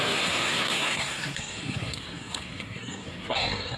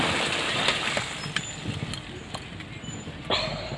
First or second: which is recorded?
second